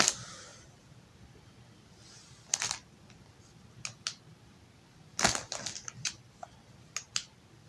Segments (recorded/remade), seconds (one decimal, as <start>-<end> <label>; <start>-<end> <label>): 0.0-7.7 recorded